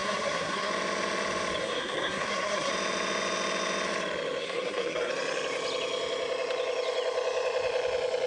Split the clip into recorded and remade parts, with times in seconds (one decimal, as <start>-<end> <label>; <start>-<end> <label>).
0.0-0.7 remade; 0.7-1.6 recorded; 1.6-2.7 remade; 2.7-4.4 recorded; 4.4-5.1 remade; 5.1-8.3 recorded